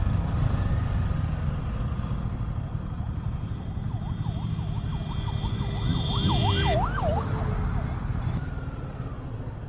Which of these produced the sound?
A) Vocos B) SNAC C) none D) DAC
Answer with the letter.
C